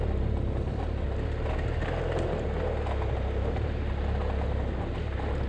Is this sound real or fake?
real